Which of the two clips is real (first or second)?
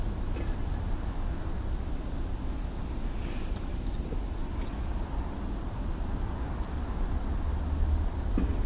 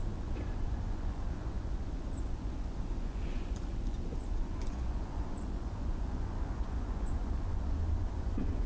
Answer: first